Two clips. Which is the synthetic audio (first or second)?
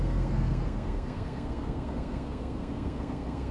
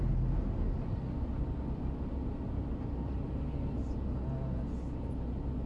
first